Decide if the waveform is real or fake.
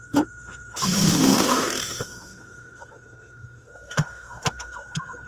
fake